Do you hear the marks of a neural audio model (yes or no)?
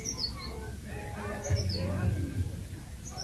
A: no